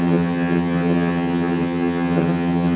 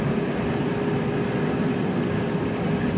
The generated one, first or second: first